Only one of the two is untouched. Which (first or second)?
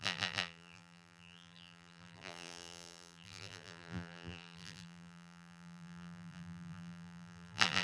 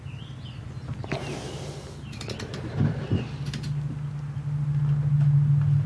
second